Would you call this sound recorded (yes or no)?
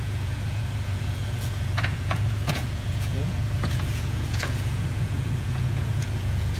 no